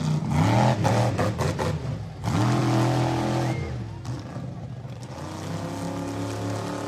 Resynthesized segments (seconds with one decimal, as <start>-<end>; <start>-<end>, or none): none